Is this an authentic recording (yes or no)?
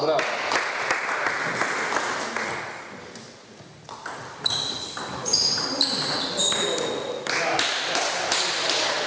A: yes